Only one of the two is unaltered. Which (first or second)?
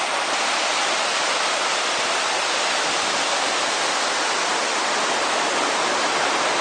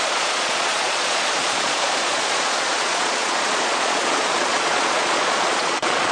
first